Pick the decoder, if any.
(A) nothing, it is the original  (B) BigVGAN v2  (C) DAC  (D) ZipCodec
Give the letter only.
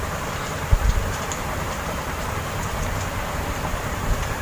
B